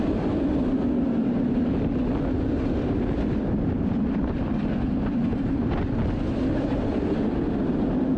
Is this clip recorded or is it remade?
recorded